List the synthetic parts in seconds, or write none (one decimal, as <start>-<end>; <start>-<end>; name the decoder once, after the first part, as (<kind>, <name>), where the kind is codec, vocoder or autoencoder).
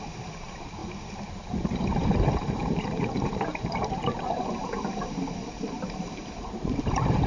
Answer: 0.0-0.8 (vocoder, BigVGAN v2); 1.3-7.3